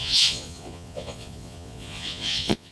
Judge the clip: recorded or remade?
remade